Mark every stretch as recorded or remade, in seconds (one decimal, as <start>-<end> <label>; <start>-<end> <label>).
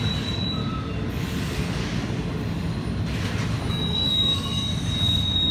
0.0-0.6 remade; 0.6-1.1 recorded; 1.1-1.8 remade; 1.8-3.7 recorded; 3.7-5.5 remade